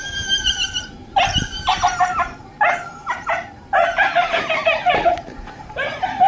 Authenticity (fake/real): fake